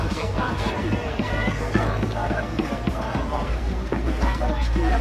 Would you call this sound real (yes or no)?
no